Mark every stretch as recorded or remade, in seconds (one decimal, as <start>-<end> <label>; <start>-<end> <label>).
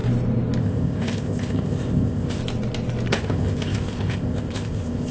0.0-0.6 recorded; 0.6-2.4 remade; 2.4-3.1 recorded; 3.1-5.1 remade